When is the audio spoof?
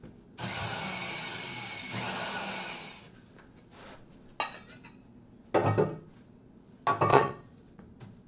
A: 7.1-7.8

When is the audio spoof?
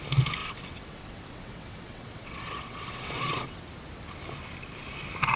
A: 0.4-3.6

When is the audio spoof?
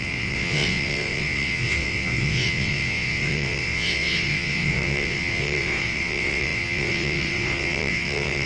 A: 0.0-8.5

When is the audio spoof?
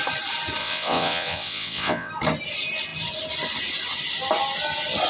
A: 0.6-2.1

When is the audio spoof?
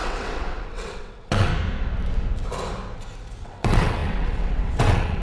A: 0.0-1.5; 3.4-5.2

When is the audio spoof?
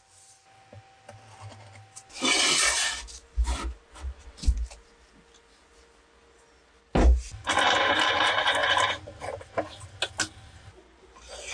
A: 3.9-4.5